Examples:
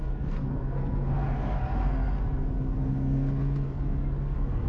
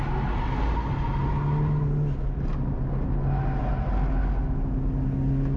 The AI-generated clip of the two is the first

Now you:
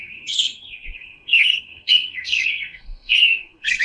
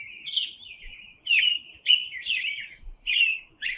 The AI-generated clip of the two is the first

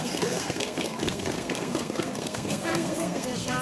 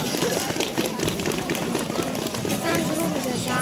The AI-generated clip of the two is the first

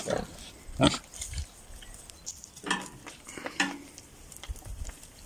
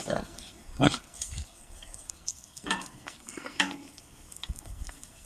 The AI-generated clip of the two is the second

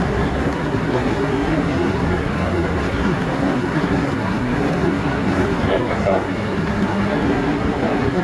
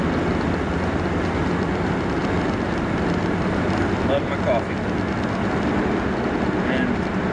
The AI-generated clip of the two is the first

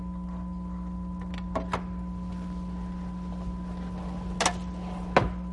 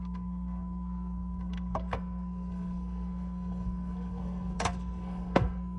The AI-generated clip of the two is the second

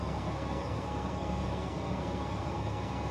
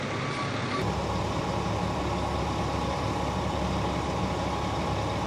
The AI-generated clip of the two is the first